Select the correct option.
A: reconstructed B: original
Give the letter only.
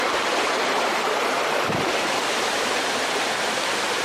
A